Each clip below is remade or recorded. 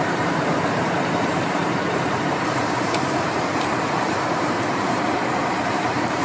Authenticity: remade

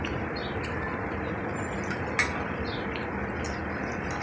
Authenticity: recorded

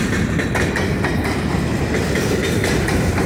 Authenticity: recorded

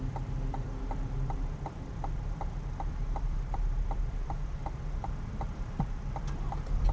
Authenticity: remade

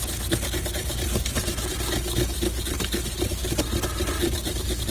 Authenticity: recorded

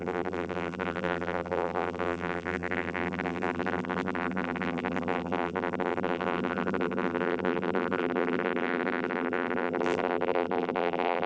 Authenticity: remade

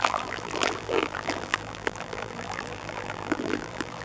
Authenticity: remade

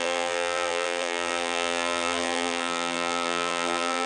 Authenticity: remade